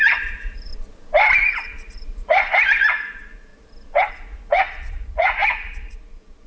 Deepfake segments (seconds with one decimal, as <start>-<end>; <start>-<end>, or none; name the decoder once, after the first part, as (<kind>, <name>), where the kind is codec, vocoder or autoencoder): 0.0-0.7 (vocoder, Vocos); 1.4-3.5; 4.1-6.5